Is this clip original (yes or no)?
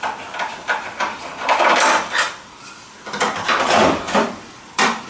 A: no